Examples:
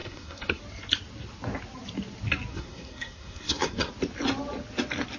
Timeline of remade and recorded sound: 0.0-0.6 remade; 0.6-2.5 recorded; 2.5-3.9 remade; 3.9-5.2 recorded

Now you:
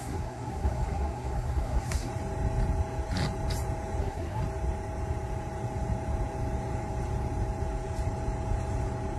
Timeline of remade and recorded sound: 0.0-2.1 remade; 2.1-4.0 recorded; 4.0-4.4 remade; 4.4-9.2 recorded

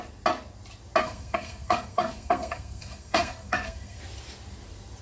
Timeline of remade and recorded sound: 0.0-1.0 recorded; 1.0-4.0 remade; 4.0-5.0 recorded

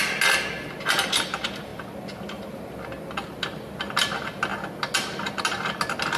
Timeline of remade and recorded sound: 0.0-6.2 recorded

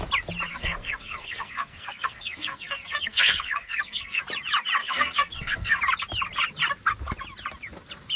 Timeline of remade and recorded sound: 0.0-0.5 recorded; 0.5-4.2 remade; 4.2-4.8 recorded; 4.8-5.8 remade; 5.8-8.2 recorded

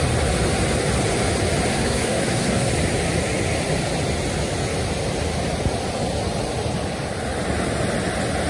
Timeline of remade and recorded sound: 0.0-1.7 recorded; 1.7-2.7 remade; 2.7-8.5 recorded

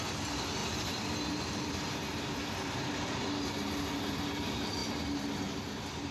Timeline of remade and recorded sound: 0.0-6.1 recorded

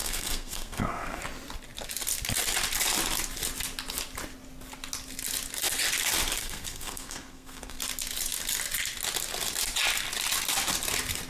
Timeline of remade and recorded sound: 0.0-1.2 remade; 1.2-6.4 recorded; 6.4-7.8 remade; 7.8-11.3 recorded